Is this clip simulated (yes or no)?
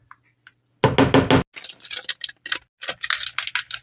no